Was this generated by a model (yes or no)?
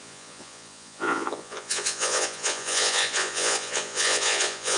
yes